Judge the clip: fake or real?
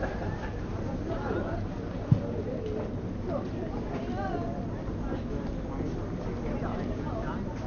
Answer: real